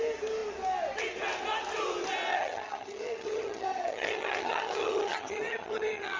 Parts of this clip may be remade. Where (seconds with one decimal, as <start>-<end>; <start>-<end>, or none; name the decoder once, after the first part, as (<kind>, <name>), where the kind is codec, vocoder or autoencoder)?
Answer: 2.3-6.2 (vocoder, HiFi-GAN)